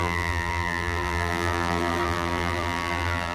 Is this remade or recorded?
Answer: remade